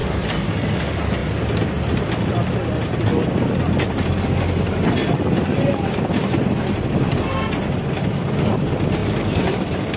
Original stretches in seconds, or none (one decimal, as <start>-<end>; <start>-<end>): 0.0-10.0

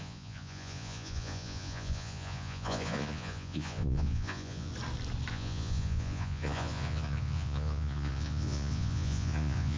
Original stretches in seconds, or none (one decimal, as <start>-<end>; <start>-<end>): 4.7-5.3

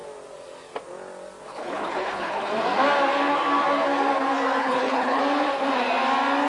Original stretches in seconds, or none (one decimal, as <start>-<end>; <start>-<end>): 0.0-1.5; 2.5-4.6; 5.2-6.5

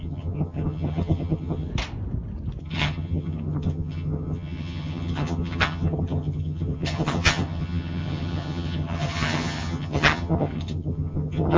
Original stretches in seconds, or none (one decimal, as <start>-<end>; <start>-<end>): 1.7-2.6

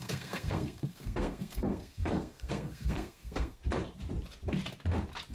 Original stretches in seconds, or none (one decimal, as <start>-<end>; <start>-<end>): 3.6-5.3

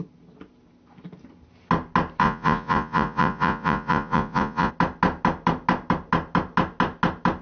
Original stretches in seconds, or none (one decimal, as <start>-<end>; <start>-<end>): 0.0-2.2; 4.7-7.4

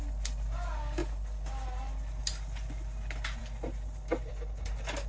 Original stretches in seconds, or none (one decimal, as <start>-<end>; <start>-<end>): 0.0-5.1